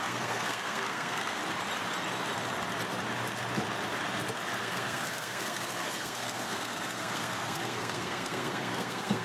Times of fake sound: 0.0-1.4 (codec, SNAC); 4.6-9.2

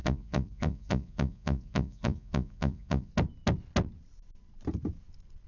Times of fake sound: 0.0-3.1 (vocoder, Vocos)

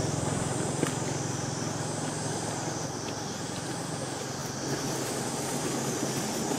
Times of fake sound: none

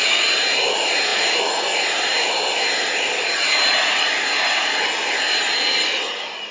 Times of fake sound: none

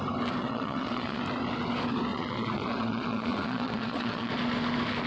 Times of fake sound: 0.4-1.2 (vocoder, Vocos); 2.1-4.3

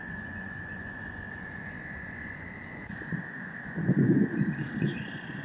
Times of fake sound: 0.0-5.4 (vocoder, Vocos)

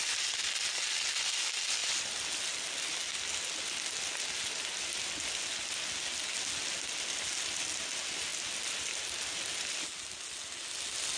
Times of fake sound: none

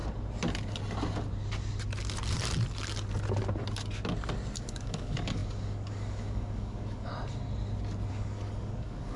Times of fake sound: 4.6-7.1 (codec, DAC); 8.1-9.2